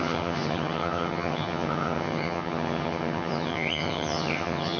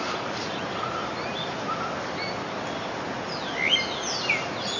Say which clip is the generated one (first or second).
first